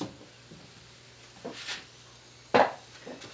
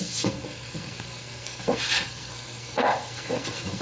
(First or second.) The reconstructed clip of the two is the second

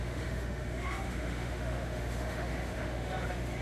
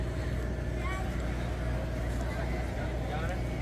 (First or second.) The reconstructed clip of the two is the first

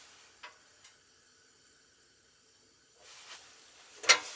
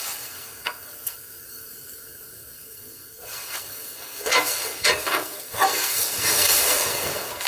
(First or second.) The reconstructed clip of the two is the second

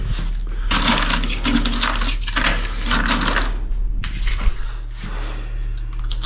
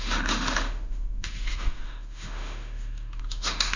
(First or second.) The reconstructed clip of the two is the second